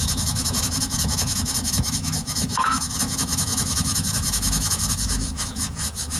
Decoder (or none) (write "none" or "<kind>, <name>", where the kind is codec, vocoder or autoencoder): autoencoder, DAC-VAE